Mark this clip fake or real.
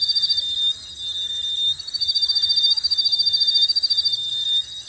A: real